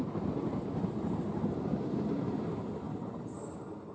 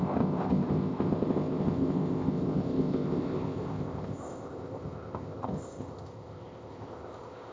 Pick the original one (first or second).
first